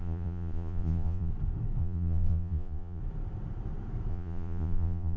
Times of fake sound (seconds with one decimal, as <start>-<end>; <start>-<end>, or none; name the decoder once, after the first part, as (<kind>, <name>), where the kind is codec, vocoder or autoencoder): 0.0-1.3 (vocoder, Vocos); 1.8-3.0; 4.1-5.2

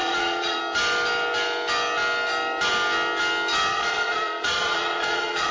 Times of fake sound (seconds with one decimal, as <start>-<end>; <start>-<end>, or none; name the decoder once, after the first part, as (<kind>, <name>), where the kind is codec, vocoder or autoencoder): 0.0-0.6 (vocoder, Vocos); 3.7-5.5

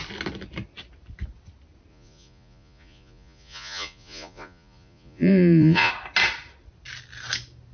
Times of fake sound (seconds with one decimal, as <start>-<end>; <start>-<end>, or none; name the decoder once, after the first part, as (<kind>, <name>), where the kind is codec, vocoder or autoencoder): 1.9-5.9 (vocoder, Vocos)

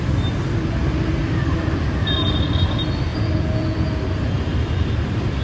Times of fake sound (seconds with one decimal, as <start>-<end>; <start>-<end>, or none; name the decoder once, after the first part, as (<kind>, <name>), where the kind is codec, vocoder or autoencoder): 3.1-4.0 (vocoder, Vocos)

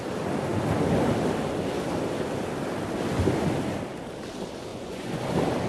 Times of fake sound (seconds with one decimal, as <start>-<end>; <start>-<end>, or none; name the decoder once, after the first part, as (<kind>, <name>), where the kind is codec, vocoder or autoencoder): 4.7-5.2 (vocoder, Vocos)